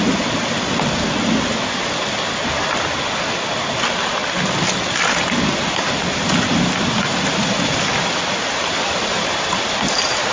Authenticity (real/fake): real